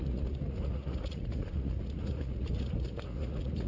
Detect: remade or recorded remade